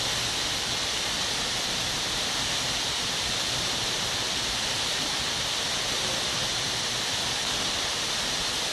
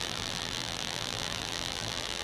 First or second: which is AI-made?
second